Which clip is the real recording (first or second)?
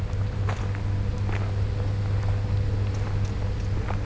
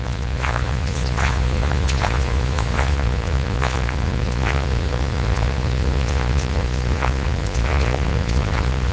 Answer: first